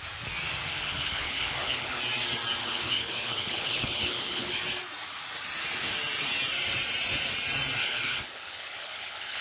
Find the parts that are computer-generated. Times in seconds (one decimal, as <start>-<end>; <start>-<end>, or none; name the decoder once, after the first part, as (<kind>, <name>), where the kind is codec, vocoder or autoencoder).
0.6-2.0 (codec, HILCodec); 2.6-4.6; 7.8-9.4